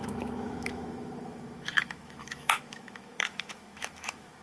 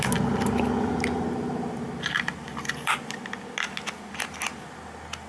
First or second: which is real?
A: second